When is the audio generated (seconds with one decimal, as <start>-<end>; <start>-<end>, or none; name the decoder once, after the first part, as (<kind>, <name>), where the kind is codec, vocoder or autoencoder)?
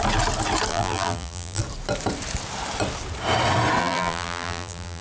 0.7-1.6 (vocoder, BigVGAN v2); 3.8-5.0